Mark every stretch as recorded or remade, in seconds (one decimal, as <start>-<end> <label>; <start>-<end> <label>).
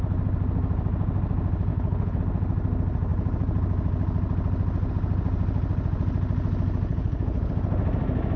0.0-1.7 recorded; 1.7-2.2 remade; 2.2-6.9 recorded; 6.9-7.5 remade; 7.5-8.4 recorded